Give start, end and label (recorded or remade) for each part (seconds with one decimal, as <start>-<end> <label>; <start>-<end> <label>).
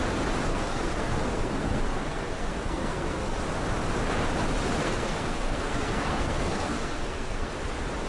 0.0-0.5 recorded; 0.5-3.4 remade; 3.4-4.8 recorded; 4.8-7.5 remade; 7.5-8.1 recorded